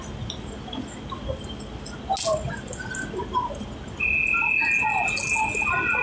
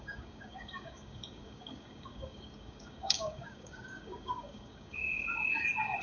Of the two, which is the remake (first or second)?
second